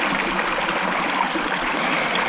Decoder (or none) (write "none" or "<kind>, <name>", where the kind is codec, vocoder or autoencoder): none